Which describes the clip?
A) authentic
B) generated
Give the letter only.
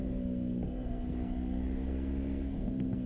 B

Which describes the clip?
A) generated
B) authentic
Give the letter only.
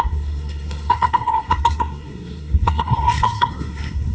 A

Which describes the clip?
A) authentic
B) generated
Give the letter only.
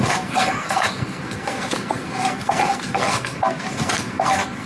B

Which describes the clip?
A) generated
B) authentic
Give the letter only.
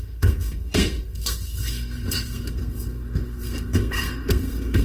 A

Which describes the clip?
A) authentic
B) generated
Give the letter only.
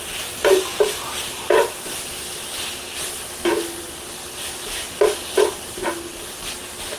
A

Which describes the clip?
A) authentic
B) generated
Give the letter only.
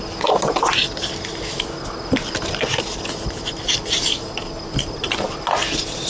A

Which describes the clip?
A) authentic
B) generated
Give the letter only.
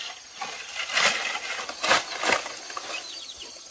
A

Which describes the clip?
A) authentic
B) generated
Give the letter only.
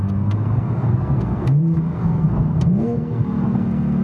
B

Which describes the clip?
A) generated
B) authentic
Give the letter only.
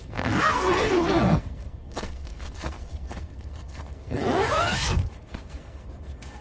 A